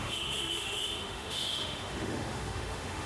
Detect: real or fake fake